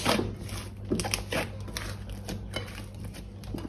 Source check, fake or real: real